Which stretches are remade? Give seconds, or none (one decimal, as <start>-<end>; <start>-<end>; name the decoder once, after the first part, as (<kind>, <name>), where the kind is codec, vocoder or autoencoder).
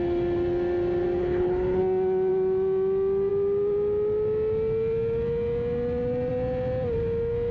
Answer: 1.2-1.8 (codec, HILCodec)